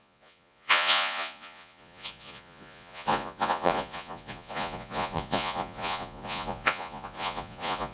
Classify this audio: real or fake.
fake